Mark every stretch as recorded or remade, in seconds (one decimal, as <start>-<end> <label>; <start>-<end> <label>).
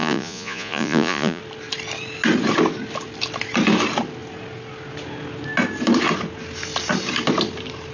0.0-1.4 remade; 1.4-7.9 recorded